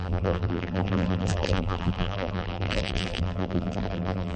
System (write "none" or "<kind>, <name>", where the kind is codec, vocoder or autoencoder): vocoder, BigVGAN v2